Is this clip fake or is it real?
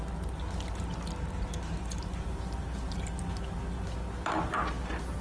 real